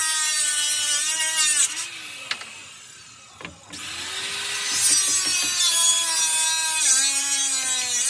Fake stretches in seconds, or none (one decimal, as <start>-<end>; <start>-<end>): none

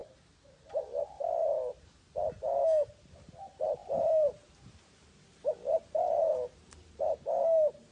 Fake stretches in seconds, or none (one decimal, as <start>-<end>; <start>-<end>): 0.0-1.2; 3.8-7.9

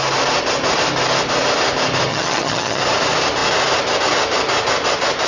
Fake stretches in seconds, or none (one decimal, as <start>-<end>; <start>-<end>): 2.1-2.8

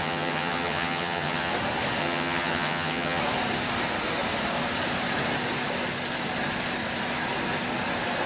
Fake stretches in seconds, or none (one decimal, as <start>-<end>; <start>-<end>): 0.0-1.5; 2.0-3.2